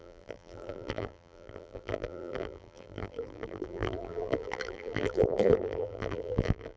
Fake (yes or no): yes